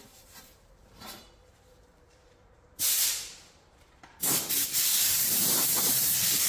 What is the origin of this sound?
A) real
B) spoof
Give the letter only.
B